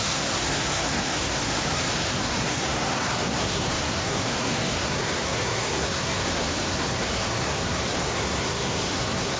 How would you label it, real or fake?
fake